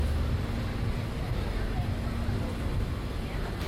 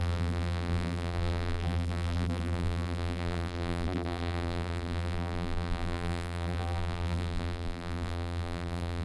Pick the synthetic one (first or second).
second